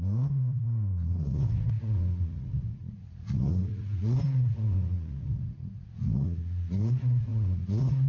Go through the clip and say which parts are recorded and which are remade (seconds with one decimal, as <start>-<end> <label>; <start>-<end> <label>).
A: 0.0-8.1 remade